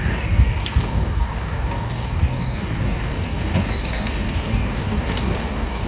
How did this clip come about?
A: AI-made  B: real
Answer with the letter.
A